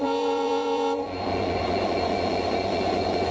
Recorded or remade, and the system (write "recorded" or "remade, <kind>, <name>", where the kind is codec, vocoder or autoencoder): remade, vocoder, Vocos